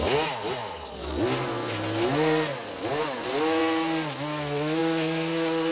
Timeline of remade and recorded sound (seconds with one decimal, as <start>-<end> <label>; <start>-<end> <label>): 0.0-5.7 recorded

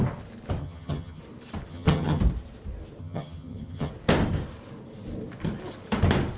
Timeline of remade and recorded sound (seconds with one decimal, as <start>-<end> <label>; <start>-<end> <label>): 0.0-0.6 recorded; 0.6-1.2 remade; 1.2-1.7 recorded; 1.7-2.2 remade; 2.2-3.0 recorded; 3.0-3.9 remade; 3.9-6.4 recorded